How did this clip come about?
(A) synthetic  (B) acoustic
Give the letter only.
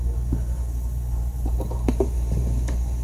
A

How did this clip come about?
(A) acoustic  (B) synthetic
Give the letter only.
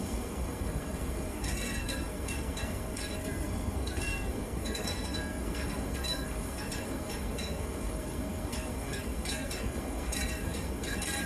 B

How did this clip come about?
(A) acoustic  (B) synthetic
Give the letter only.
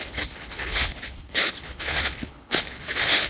B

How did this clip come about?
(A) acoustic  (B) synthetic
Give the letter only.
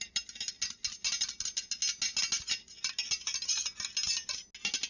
A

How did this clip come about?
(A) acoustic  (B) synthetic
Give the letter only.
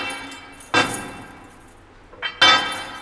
A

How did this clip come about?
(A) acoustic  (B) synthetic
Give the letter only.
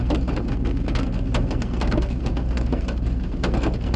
B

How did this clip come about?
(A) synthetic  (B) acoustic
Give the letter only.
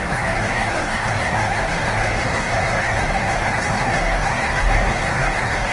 A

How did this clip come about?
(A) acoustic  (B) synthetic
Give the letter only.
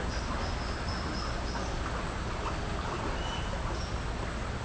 A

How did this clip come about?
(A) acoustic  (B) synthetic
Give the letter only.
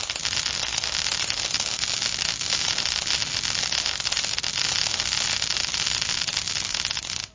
A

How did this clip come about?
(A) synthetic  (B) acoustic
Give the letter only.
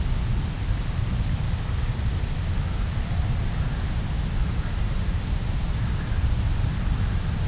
A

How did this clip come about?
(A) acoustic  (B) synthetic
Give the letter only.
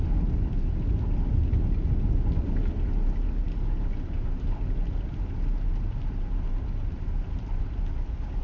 A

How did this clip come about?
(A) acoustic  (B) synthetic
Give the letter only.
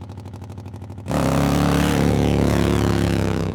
B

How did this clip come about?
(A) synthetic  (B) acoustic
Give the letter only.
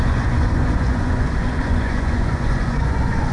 A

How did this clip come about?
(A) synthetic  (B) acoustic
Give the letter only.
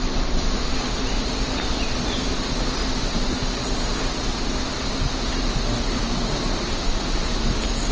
B